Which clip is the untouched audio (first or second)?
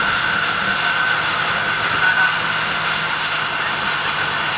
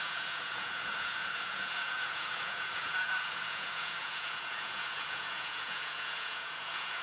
first